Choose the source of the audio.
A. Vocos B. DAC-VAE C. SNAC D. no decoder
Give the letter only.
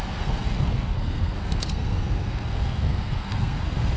C